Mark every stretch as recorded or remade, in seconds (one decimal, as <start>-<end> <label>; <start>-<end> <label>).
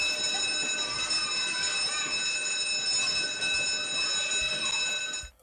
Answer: 0.0-5.4 recorded